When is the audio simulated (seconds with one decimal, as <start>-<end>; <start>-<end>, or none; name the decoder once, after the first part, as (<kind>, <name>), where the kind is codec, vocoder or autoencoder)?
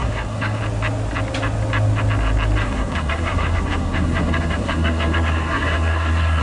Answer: 0.0-0.6 (codec, SNAC); 2.6-6.4